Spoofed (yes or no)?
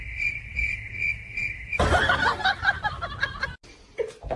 no